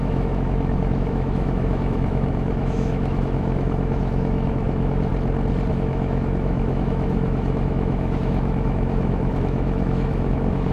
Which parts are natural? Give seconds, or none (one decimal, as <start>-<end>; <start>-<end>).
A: 5.1-5.7